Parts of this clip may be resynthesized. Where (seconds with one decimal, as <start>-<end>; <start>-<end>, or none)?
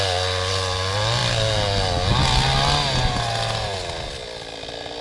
none